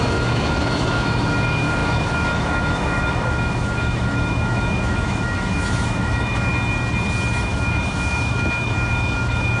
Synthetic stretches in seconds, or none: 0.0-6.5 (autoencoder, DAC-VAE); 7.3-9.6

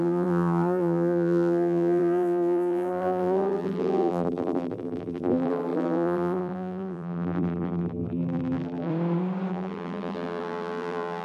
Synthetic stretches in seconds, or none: 0.0-8.9 (vocoder, BigVGAN v2); 9.5-11.2

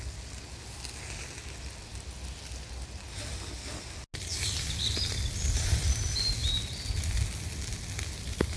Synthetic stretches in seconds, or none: none